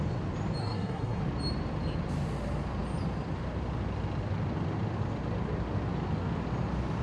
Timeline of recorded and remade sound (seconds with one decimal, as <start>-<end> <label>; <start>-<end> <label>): 0.0-0.6 recorded; 0.6-1.2 remade; 1.2-7.0 recorded